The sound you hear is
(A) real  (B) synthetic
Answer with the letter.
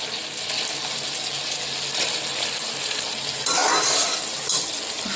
A